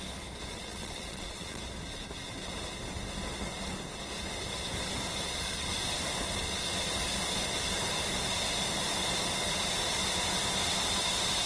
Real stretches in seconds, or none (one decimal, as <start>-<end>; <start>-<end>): 0.0-0.5; 1.6-11.5

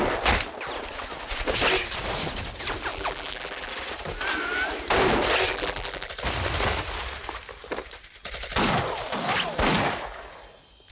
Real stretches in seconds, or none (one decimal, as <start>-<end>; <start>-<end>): 0.0-2.9; 3.7-5.5; 6.1-10.9

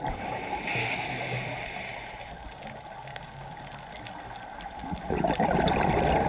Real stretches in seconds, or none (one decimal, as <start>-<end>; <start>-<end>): 0.0-0.8; 1.4-3.1; 3.6-6.3

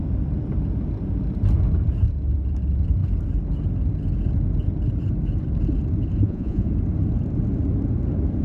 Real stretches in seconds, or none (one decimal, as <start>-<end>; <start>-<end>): 0.0-6.2; 6.7-8.4

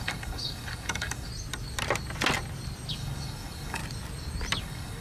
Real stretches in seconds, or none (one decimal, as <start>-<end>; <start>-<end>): 1.3-2.9; 3.8-4.6

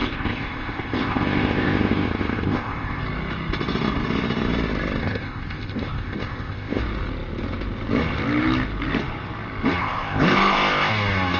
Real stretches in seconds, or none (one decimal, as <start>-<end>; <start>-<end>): 3.0-5.0; 6.8-9.8; 10.9-11.4

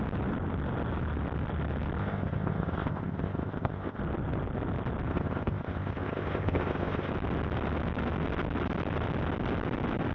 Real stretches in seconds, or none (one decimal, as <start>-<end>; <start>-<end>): 0.0-2.0; 4.0-5.1; 7.1-10.1

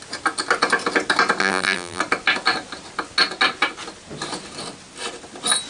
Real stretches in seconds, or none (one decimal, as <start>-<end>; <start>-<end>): 0.0-1.4; 2.0-5.7